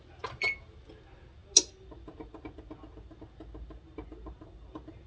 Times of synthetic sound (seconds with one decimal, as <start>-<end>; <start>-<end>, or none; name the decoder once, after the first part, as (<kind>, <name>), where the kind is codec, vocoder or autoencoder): none